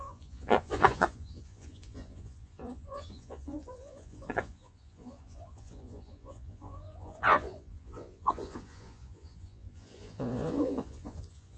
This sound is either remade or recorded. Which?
remade